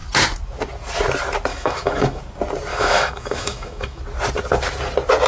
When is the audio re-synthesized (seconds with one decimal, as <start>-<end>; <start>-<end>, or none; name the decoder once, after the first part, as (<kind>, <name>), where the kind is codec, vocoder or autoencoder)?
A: 1.5-2.2 (autoencoder, DAC-VAE); 2.7-4.0